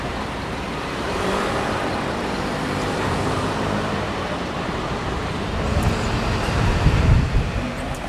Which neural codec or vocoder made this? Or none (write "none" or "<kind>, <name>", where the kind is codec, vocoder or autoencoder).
vocoder, BigVGAN v2